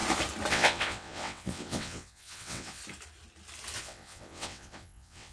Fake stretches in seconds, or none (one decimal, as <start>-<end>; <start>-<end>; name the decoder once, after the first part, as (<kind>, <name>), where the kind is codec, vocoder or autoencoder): 0.5-2.8 (vocoder, WaveNeXt); 3.8-5.3